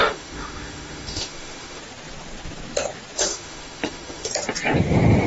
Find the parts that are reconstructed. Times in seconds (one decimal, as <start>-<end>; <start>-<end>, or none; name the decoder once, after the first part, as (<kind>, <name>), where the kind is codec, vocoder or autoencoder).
0.0-1.8 (autoencoder, DAC-VAE); 3.3-4.3